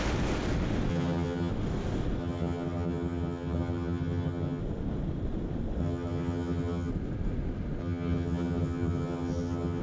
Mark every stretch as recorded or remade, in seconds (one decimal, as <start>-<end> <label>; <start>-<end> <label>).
0.0-0.9 recorded; 0.9-1.5 remade; 1.5-2.2 recorded; 2.2-4.6 remade; 4.6-5.8 recorded; 5.8-6.9 remade; 6.9-7.8 recorded; 7.8-9.8 remade